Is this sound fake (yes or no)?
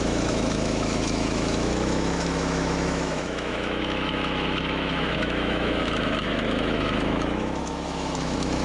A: yes